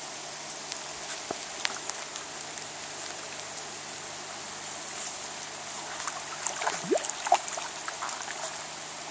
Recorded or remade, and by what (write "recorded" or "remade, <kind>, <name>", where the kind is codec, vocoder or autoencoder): recorded